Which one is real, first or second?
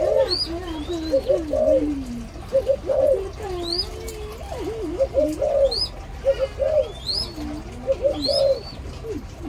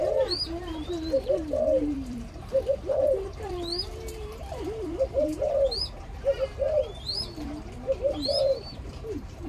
first